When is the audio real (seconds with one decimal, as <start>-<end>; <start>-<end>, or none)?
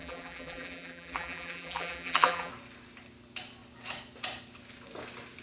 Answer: 2.5-5.4